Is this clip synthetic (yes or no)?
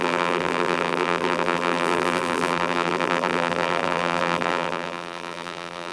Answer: yes